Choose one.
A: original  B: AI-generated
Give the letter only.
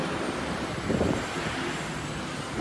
A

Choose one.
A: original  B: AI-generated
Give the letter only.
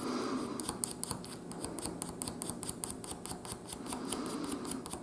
A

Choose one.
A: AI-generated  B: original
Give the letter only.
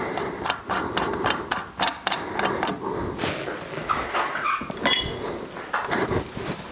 B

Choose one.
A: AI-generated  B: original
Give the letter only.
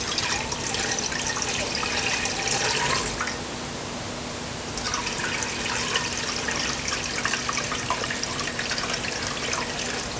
B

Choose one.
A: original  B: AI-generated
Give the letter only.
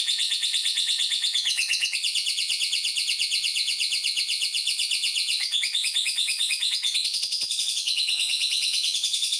B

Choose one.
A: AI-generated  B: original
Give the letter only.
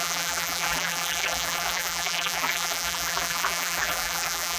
A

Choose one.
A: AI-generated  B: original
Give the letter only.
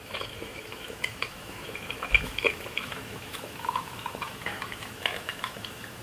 A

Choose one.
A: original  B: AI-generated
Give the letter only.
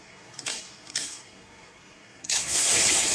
B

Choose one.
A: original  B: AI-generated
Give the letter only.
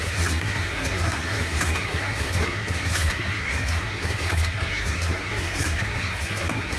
B